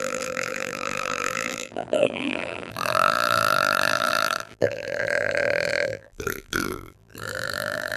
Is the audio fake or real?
fake